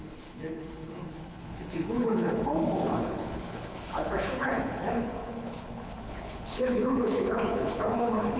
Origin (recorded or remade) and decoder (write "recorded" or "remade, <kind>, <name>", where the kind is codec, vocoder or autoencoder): remade, codec, HILCodec